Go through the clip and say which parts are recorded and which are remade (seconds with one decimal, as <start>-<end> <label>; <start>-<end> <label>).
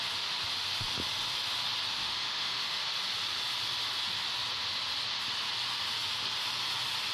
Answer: 0.0-1.9 recorded; 1.9-2.8 remade; 2.8-7.1 recorded